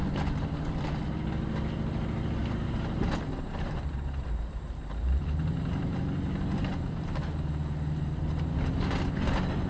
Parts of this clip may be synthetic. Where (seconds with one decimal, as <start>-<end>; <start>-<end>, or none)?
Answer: 2.4-6.0; 6.7-8.3